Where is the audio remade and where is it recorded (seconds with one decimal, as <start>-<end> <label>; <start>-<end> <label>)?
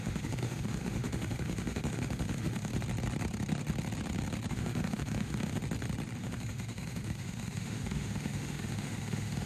0.0-2.7 remade; 2.7-4.5 recorded; 4.5-5.6 remade; 5.6-6.2 recorded; 6.2-9.5 remade